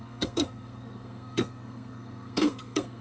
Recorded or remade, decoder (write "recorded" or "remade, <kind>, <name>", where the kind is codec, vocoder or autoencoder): remade, codec, SNAC